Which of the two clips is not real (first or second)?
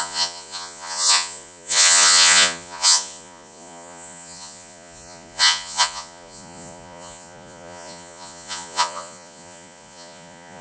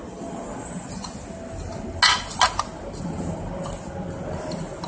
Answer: first